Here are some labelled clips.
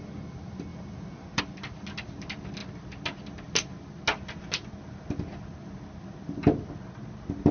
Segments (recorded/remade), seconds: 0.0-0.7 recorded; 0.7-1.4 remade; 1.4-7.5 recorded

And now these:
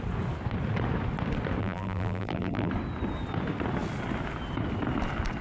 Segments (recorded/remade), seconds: 0.0-1.6 recorded; 1.6-2.7 remade; 2.7-5.4 recorded

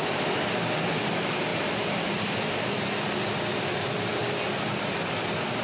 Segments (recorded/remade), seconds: 0.0-1.5 recorded; 1.5-3.2 remade; 3.2-4.1 recorded; 4.1-4.9 remade; 4.9-5.6 recorded

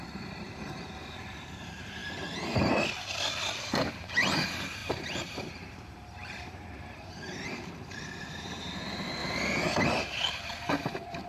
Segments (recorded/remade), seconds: 0.0-2.0 remade; 2.0-3.6 recorded; 3.6-9.2 remade; 9.2-9.8 recorded; 9.8-11.3 remade

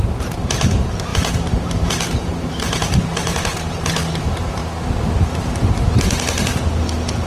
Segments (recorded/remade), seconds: 0.0-4.6 remade; 4.6-7.3 recorded

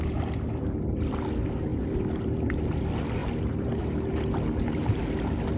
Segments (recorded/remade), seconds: 0.0-1.7 recorded; 1.7-2.7 remade; 2.7-3.2 recorded; 3.2-5.0 remade; 5.0-5.6 recorded

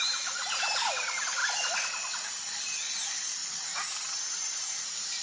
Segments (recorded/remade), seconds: 0.0-1.4 remade; 1.4-2.6 recorded; 2.6-5.2 remade

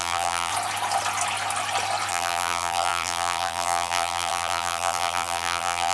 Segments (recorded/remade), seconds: 0.0-0.5 remade; 0.5-2.1 recorded; 2.1-5.9 remade